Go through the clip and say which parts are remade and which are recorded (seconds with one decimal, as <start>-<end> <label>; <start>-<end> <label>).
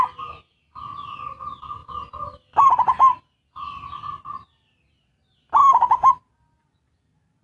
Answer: 0.0-5.6 recorded; 5.6-6.1 remade; 6.1-7.4 recorded